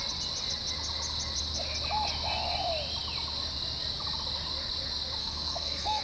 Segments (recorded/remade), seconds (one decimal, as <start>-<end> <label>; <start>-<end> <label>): 0.0-5.2 recorded; 5.2-6.0 remade

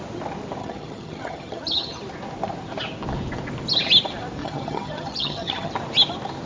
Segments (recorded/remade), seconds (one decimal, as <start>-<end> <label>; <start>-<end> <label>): 0.0-0.6 recorded; 0.6-2.0 remade; 2.0-4.4 recorded; 4.4-5.7 remade; 5.7-6.5 recorded

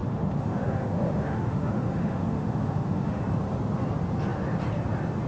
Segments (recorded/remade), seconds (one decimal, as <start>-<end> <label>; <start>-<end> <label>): 0.0-3.2 remade; 3.2-5.3 recorded

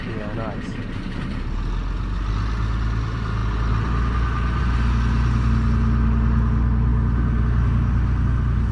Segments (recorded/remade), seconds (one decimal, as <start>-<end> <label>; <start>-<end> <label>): 0.0-8.7 recorded